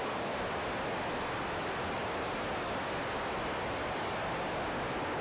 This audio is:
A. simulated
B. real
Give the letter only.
B